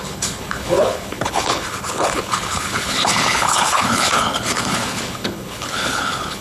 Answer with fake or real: fake